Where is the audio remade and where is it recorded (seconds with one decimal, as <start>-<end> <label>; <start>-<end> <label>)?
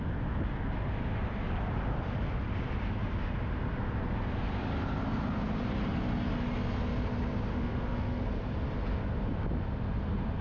0.0-7.5 recorded; 7.5-8.2 remade; 8.2-10.4 recorded